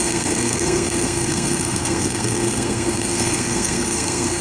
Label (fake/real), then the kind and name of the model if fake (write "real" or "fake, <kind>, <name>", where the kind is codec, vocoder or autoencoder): fake, codec, SNAC